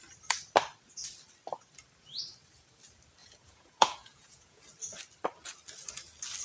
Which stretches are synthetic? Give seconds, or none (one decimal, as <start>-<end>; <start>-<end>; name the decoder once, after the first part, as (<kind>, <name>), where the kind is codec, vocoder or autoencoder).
3.2-4.6 (vocoder, Vocos)